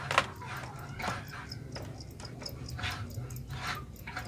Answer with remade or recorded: recorded